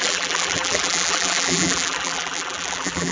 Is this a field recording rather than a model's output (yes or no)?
no